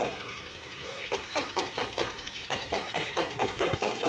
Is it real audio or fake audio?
fake